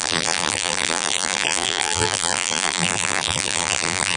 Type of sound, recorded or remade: remade